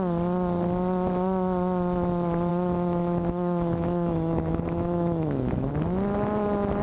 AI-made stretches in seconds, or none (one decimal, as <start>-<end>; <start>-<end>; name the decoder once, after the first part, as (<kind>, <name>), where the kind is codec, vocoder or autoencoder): 2.5-5.7 (autoencoder, DAC-VAE)